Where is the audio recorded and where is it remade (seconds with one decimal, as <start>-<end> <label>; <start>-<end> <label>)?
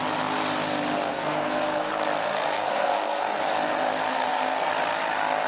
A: 0.0-1.1 recorded; 1.1-1.9 remade; 1.9-2.3 recorded; 2.3-3.4 remade; 3.4-4.1 recorded; 4.1-4.7 remade; 4.7-5.5 recorded